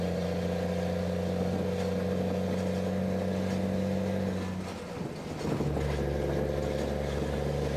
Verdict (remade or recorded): recorded